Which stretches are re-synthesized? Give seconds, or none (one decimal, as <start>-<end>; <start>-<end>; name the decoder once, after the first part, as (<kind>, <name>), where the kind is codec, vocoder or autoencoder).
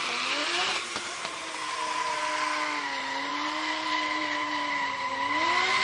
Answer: 0.4-2.2 (vocoder, BigVGAN v2); 3.3-4.7